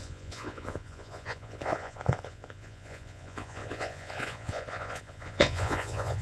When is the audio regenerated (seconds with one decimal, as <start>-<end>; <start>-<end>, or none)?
0.0-6.2